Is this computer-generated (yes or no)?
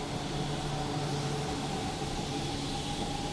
no